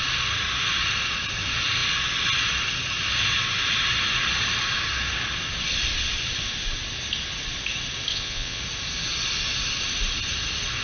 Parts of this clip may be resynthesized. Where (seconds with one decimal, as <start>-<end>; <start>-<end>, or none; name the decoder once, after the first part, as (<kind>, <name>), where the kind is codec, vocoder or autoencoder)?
8.1-8.6 (vocoder, WaveNeXt)